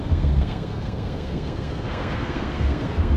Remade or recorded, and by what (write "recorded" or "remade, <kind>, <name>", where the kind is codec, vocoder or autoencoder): remade, codec, SNAC